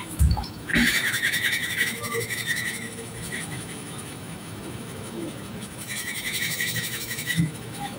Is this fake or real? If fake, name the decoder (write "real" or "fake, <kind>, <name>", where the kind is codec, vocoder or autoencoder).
fake, autoencoder, DAC-VAE